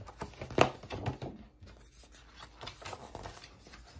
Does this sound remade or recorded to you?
recorded